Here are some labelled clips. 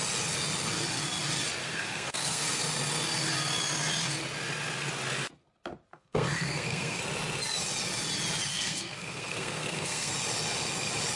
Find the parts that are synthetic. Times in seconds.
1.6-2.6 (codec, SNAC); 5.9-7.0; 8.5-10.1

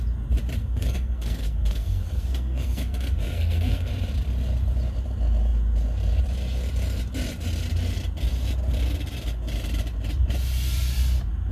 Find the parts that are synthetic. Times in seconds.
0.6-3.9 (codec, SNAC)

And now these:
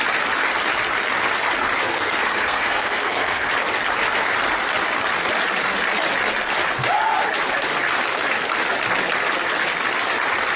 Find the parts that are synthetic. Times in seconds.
1.9-3.5 (codec, SNAC)